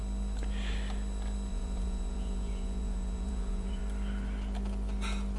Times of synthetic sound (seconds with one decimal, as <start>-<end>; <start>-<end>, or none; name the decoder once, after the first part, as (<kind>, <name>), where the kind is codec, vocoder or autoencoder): 1.5-3.8 (vocoder, Vocos)